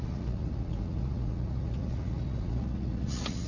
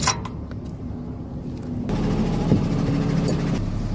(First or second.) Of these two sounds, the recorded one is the second